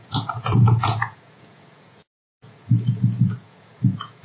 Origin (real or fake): fake